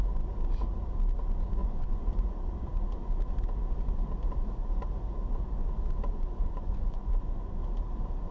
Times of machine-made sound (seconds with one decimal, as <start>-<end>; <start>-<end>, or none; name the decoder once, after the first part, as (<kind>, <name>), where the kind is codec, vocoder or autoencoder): 1.6-2.3 (vocoder, Vocos); 6.1-7.6